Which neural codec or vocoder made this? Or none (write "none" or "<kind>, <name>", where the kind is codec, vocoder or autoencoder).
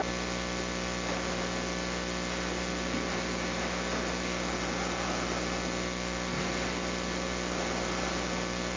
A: none